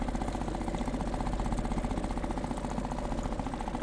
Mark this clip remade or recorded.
recorded